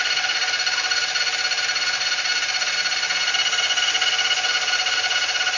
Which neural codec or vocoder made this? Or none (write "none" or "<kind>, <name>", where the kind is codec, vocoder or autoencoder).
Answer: none